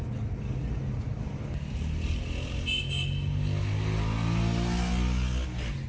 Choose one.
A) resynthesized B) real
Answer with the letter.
B